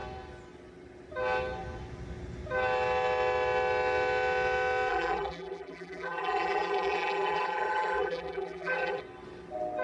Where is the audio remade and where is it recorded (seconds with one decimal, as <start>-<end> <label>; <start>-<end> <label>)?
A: 0.0-4.9 recorded; 4.9-9.0 remade; 9.0-9.8 recorded